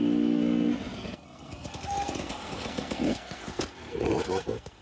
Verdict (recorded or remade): remade